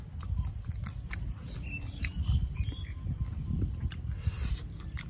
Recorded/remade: recorded